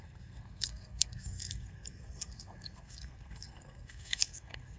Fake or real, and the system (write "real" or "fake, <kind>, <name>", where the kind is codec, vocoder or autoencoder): fake, codec, SNAC